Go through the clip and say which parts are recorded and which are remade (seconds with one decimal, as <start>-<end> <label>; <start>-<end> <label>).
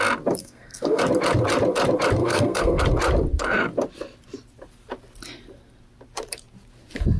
0.0-0.4 recorded; 0.4-1.0 remade; 1.0-2.2 recorded; 2.2-2.8 remade; 2.8-7.2 recorded